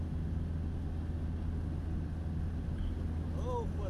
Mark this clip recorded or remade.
recorded